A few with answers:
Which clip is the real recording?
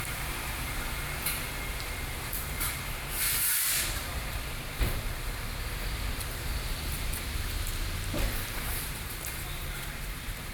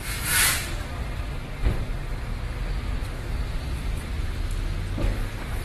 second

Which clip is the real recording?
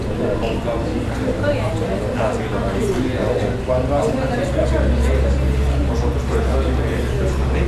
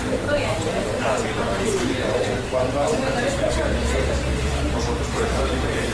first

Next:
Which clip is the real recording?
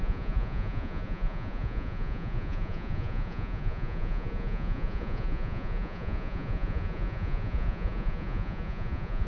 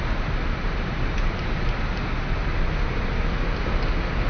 second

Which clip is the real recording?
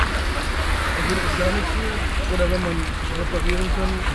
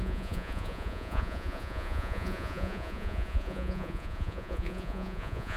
first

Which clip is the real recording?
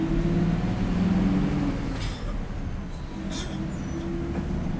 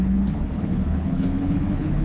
first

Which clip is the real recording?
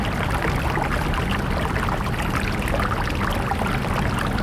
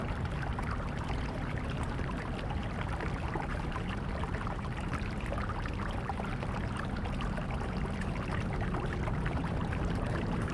first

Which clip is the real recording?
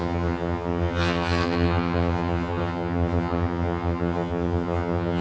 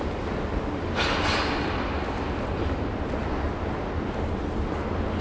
second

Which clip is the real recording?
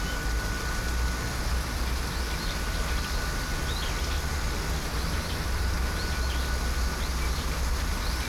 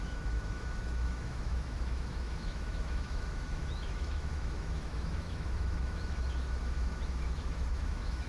first